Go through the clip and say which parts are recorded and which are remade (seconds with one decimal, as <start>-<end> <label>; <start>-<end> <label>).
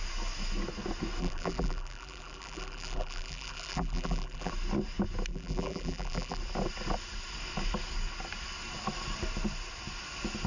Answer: 0.0-1.2 recorded; 1.2-4.5 remade; 4.5-5.3 recorded; 5.3-6.4 remade; 6.4-10.5 recorded